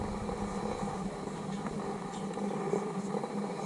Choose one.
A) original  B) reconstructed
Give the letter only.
A